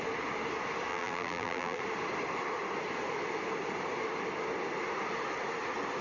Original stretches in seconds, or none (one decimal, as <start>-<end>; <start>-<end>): 0.0-0.9; 1.8-6.0